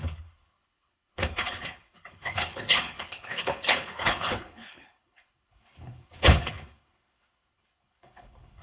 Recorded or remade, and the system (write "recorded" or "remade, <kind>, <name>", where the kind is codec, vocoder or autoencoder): remade, codec, HILCodec